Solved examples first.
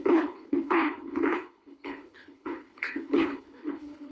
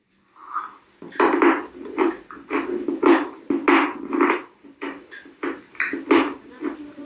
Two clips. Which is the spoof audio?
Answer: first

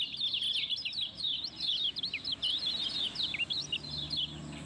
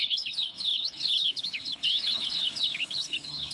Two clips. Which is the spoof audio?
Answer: second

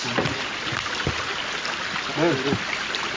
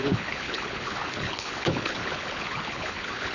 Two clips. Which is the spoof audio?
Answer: second